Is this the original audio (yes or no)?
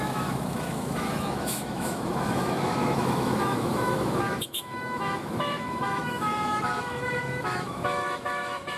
no